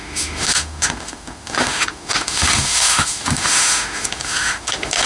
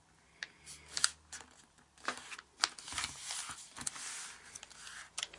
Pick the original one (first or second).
second